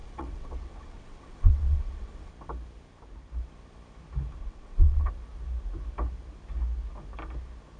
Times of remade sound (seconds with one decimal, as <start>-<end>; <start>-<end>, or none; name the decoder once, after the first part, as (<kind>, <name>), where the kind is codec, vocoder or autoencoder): 0.0-2.3 (vocoder, WaveNeXt); 4.4-5.1